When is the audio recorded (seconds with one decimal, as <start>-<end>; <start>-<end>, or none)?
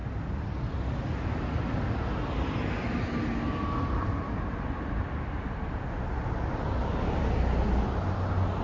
0.0-8.6